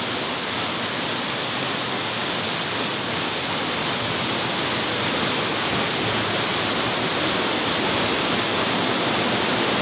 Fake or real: real